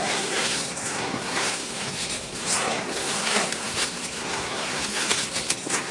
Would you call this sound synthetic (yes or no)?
yes